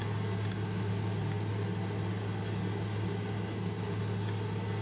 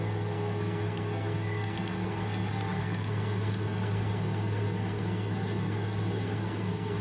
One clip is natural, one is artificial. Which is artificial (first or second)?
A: second